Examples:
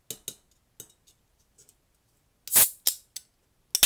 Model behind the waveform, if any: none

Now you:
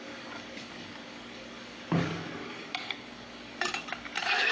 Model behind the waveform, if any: codec, DAC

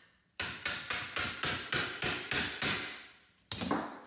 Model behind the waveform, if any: none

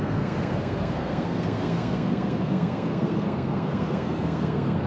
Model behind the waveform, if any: codec, SNAC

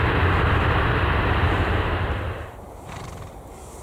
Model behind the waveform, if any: vocoder, BigVGAN v2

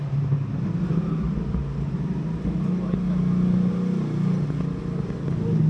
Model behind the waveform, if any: none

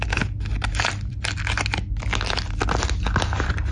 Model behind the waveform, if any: none